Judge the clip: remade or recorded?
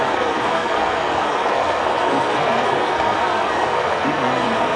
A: remade